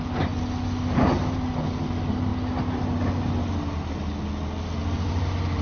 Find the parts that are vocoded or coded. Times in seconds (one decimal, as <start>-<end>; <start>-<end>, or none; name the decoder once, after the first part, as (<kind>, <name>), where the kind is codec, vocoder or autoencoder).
none